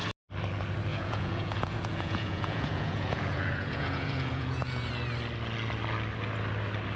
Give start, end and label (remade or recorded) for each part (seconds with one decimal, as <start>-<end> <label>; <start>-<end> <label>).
0.0-0.9 recorded; 0.9-4.9 remade; 4.9-7.0 recorded